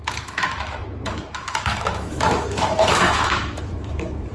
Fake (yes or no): yes